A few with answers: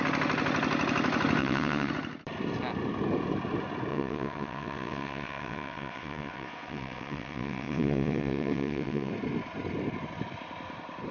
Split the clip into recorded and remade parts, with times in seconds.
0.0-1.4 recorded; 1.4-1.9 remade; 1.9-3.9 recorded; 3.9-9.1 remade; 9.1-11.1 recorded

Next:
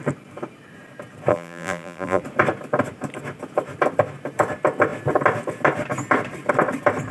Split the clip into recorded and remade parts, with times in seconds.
0.0-1.3 recorded; 1.3-2.2 remade; 2.2-7.1 recorded

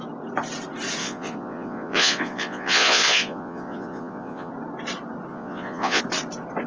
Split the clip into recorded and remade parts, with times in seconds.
0.0-1.0 recorded; 1.0-4.5 remade; 4.5-5.3 recorded; 5.3-6.0 remade; 6.0-6.7 recorded

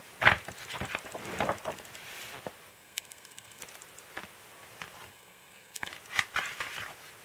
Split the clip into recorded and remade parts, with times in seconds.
0.0-2.7 recorded; 2.7-3.6 remade; 3.6-5.1 recorded; 5.1-5.9 remade; 5.9-7.2 recorded